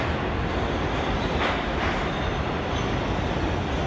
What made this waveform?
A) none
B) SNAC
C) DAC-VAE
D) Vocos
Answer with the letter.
A